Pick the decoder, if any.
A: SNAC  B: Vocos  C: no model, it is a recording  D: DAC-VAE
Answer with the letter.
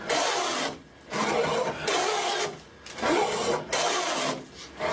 C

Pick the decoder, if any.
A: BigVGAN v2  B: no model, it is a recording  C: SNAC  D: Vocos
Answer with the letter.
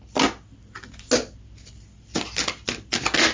B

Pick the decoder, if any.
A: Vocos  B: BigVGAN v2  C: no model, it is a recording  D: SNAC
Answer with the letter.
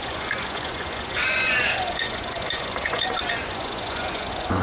A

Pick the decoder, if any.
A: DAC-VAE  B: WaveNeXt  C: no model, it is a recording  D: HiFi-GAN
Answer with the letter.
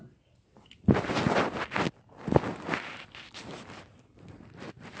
C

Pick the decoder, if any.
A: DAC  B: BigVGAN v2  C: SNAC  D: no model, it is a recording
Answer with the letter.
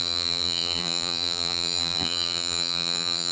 B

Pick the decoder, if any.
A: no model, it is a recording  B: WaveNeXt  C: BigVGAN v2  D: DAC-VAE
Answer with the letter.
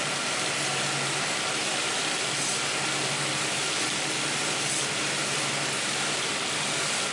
C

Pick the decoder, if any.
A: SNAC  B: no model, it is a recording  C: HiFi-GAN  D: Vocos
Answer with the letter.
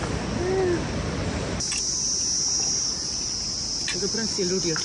B